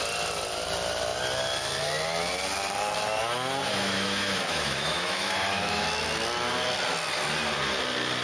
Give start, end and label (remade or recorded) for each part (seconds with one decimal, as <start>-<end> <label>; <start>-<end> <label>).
0.0-3.7 recorded; 3.7-5.8 remade; 5.8-8.2 recorded